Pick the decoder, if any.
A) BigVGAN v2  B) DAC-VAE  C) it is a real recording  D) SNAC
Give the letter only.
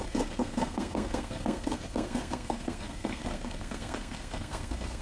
D